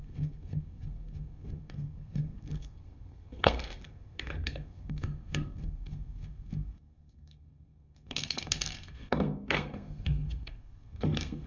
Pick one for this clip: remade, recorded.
remade